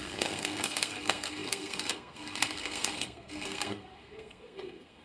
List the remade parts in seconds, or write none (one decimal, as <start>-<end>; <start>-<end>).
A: 0.0-5.0